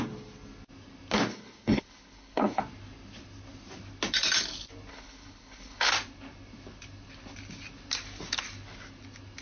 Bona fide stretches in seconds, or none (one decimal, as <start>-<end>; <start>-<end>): 0.0-1.3; 2.6-4.9; 5.9-9.4